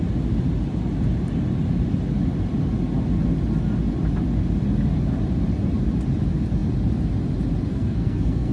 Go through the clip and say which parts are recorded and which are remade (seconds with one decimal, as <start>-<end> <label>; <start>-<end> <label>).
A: 0.0-7.7 recorded; 7.7-8.5 remade